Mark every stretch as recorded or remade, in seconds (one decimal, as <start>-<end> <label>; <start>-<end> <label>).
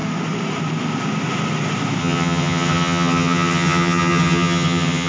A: 0.0-2.0 recorded; 2.0-5.1 remade